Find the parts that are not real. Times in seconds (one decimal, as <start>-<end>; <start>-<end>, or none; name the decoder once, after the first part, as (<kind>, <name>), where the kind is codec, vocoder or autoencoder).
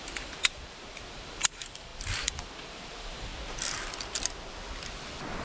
0.0-3.3 (vocoder, BigVGAN v2)